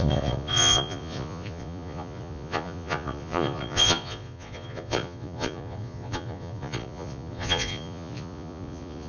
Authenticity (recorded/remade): remade